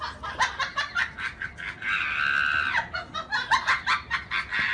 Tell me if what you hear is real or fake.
real